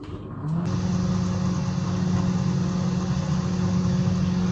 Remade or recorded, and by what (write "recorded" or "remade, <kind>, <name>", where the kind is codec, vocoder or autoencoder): recorded